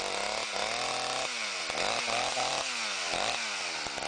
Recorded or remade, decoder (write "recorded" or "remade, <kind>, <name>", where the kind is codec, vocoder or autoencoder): recorded